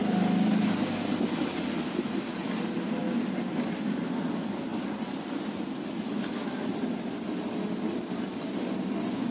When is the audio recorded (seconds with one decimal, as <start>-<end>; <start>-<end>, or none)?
0.0-9.3